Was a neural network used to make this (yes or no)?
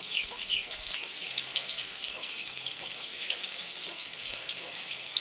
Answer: yes